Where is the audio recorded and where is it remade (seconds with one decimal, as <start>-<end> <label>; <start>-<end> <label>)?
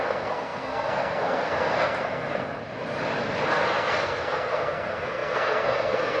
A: 0.0-2.5 remade; 2.5-3.5 recorded; 3.5-6.2 remade